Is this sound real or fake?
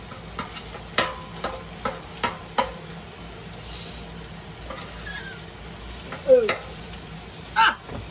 real